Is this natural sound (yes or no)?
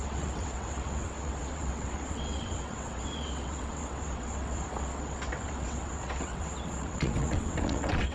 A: no